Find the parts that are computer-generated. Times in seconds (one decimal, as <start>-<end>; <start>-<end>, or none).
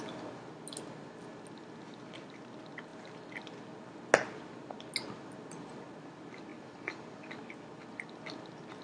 6.5-7.3